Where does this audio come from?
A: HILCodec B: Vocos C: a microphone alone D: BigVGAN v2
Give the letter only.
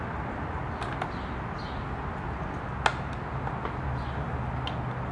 C